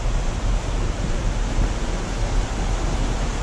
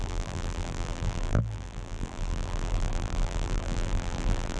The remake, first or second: second